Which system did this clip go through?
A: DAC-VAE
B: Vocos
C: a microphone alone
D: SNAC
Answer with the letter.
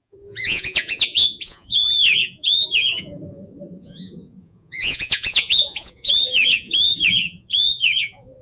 B